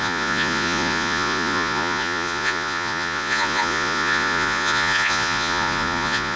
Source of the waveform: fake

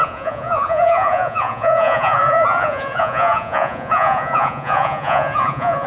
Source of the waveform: fake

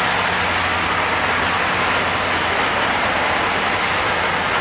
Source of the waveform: real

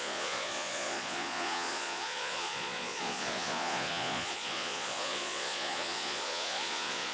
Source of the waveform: fake